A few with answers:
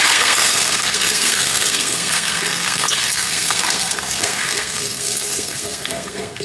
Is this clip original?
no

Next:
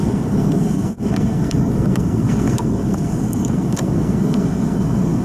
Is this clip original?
no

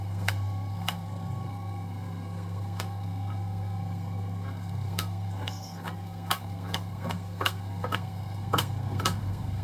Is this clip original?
no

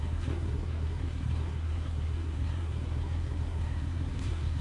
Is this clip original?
no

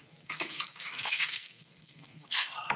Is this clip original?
no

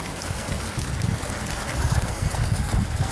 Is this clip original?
no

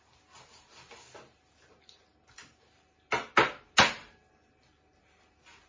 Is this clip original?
yes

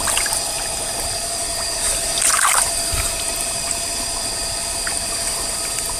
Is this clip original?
yes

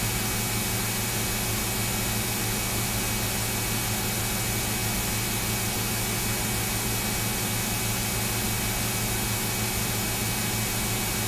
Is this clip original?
yes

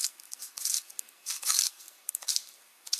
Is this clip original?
no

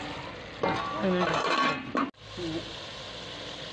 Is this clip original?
yes